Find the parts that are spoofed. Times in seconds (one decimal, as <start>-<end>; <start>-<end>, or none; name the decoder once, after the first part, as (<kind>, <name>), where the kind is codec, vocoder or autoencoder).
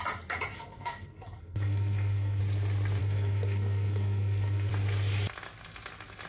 0.5-2.4 (codec, SNAC); 3.0-4.7